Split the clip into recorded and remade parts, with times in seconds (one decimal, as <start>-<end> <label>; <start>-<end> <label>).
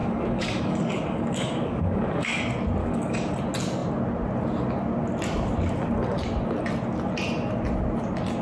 0.0-2.4 remade; 2.4-2.8 recorded; 2.8-3.3 remade; 3.3-8.4 recorded